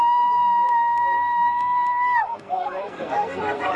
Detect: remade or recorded remade